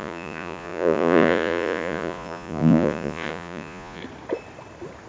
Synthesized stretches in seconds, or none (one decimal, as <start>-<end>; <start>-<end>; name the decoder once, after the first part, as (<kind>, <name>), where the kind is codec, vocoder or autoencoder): 0.0-4.0 (vocoder, Vocos)